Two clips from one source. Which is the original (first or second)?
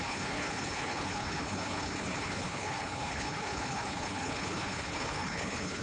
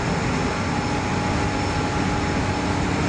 second